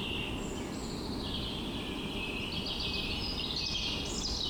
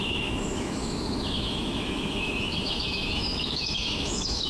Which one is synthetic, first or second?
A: second